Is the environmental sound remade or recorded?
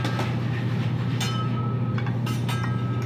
recorded